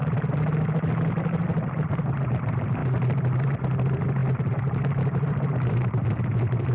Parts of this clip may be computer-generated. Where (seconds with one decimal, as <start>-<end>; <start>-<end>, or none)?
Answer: 2.3-4.2; 5.3-6.7